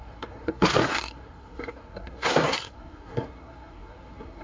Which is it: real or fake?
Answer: fake